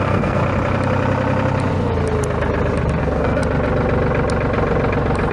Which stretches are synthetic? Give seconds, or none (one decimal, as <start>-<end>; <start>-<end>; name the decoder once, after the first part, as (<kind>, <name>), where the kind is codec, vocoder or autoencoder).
0.0-0.4 (codec, SNAC); 3.0-3.4